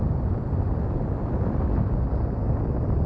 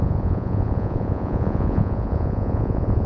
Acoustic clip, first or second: first